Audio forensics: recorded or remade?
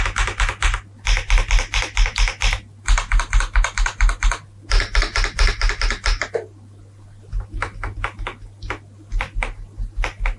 recorded